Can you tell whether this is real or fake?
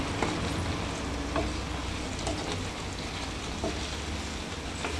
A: real